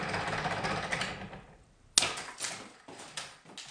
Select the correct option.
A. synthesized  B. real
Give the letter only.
B